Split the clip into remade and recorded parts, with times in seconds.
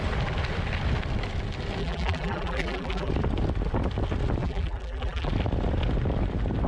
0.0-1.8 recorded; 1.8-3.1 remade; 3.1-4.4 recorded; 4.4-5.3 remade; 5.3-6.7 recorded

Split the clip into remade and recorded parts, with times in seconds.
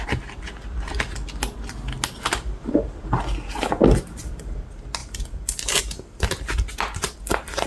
0.0-5.0 recorded; 5.0-5.8 remade; 5.8-7.7 recorded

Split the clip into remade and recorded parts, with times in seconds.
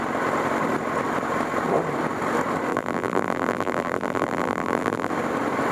0.0-2.7 recorded; 2.7-5.1 remade; 5.1-5.7 recorded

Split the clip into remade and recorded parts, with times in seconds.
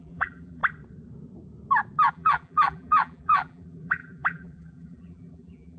0.0-0.6 remade; 0.6-2.1 recorded; 2.1-5.8 remade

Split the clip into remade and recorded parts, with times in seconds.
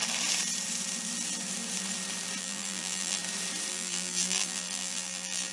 0.0-2.4 recorded; 2.4-3.2 remade; 3.2-3.7 recorded; 3.7-5.5 remade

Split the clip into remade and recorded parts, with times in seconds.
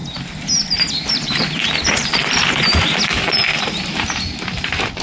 0.0-3.0 remade; 3.0-5.0 recorded